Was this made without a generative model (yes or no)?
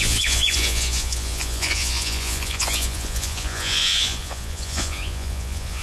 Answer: no